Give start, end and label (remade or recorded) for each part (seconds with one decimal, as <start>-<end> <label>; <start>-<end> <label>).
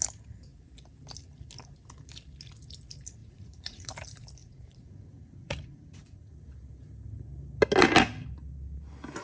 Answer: 0.0-3.2 recorded; 3.2-3.9 remade; 3.9-4.4 recorded; 4.4-6.4 remade; 6.4-9.2 recorded